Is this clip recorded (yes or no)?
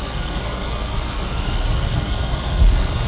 no